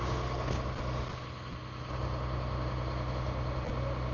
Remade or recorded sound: recorded